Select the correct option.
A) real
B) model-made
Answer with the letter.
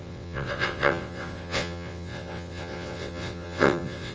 B